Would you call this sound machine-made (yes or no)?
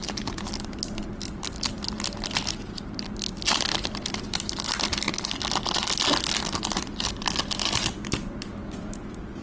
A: no